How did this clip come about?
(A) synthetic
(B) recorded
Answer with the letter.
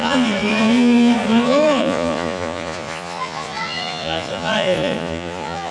A